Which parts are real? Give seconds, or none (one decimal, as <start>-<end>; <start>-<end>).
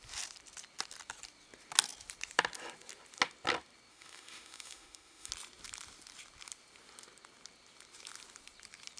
0.0-3.9; 5.3-9.0